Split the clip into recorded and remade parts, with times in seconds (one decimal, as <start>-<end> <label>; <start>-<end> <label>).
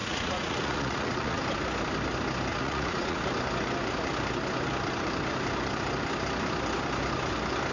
0.0-1.4 remade; 1.4-2.5 recorded; 2.5-3.2 remade; 3.2-7.7 recorded